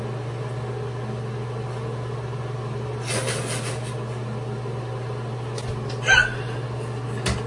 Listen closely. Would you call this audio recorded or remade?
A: recorded